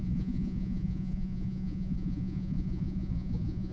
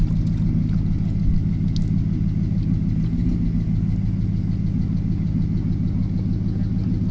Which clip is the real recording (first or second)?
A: second